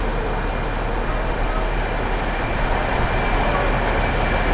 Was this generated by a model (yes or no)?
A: no